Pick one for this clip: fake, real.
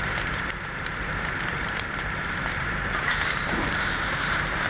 fake